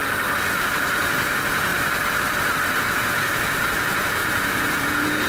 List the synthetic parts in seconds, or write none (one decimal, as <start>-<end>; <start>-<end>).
1.0-1.7; 2.8-5.3